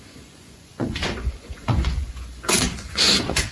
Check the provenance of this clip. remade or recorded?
remade